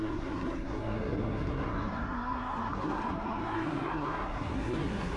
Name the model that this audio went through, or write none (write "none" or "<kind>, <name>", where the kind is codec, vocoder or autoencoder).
codec, SNAC